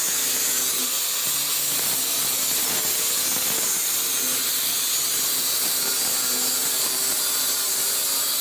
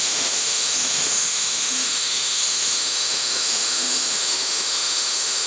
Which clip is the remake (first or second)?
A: second